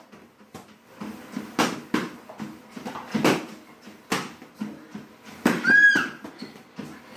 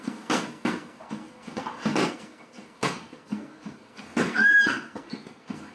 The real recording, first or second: first